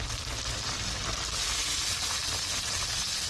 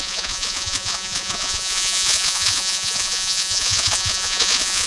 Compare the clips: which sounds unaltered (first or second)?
first